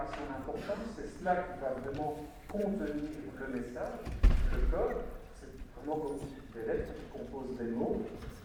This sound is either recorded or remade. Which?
remade